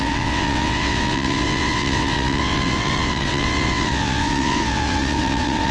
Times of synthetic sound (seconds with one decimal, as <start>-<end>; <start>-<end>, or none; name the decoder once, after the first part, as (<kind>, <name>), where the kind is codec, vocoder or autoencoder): 0.0-5.7 (vocoder, WaveNeXt)